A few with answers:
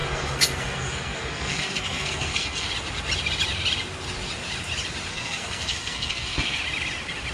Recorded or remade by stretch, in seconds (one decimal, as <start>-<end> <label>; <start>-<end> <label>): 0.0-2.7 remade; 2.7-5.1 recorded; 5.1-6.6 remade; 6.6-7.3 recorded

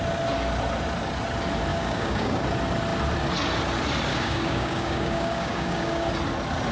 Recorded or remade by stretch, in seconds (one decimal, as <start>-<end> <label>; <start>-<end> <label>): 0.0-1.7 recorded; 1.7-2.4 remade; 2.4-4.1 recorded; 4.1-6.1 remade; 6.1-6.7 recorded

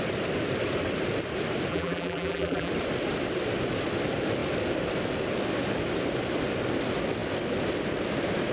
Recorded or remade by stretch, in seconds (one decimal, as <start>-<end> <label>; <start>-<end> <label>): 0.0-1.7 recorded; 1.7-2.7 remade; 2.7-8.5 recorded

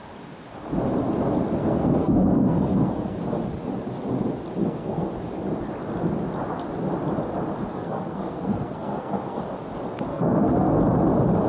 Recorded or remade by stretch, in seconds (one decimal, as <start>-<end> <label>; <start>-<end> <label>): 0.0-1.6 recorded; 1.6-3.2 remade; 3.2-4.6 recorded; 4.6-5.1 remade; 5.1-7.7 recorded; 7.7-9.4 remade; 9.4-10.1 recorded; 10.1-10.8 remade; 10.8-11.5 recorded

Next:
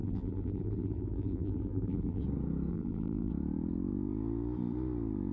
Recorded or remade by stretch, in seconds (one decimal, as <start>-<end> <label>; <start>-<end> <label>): 0.0-2.2 remade; 2.2-2.7 recorded; 2.7-3.3 remade; 3.3-5.3 recorded

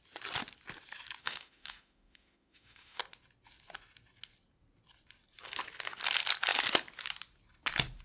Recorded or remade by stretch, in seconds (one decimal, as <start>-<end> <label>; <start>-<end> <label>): 0.0-1.2 recorded; 1.2-3.0 remade; 3.0-8.0 recorded

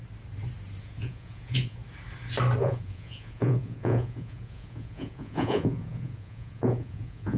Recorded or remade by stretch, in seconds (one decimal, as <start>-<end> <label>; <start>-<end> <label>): 0.0-0.8 recorded; 0.8-1.8 remade; 1.8-2.6 recorded; 2.6-7.4 remade

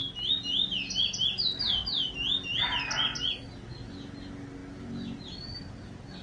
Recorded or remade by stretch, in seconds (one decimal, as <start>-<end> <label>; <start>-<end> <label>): 0.0-6.2 recorded